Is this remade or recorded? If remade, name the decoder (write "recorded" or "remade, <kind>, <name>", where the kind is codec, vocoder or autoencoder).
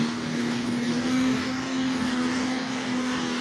remade, codec, DAC